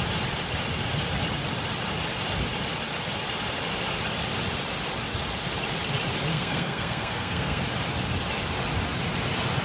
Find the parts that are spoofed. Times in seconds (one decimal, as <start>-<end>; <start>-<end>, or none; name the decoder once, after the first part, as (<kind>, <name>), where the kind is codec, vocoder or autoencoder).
6.3-7.6 (codec, SNAC)